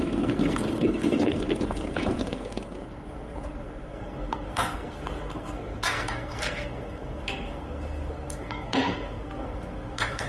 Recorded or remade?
remade